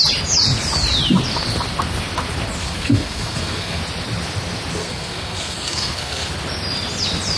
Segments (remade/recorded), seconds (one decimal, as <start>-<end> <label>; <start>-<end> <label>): 0.0-2.6 recorded; 2.6-3.8 remade; 3.8-4.8 recorded; 4.8-6.3 remade; 6.3-7.4 recorded